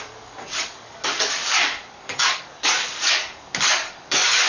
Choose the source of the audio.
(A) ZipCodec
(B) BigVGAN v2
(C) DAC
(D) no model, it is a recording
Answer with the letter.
C